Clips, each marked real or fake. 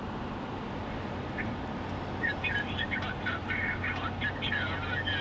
real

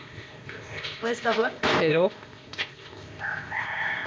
fake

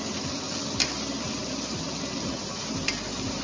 real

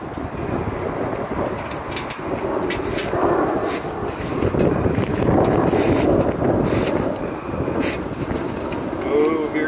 real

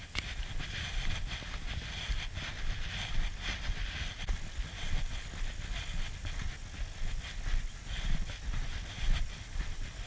real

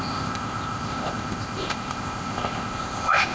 fake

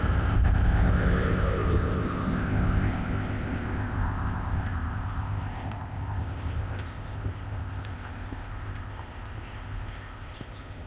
fake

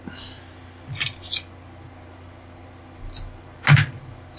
real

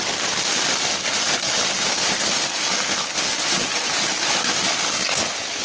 real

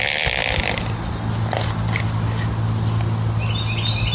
real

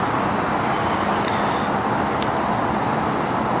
real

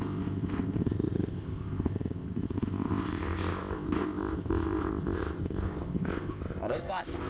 fake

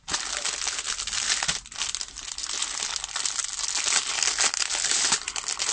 real